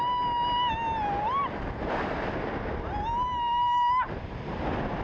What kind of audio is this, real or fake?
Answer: real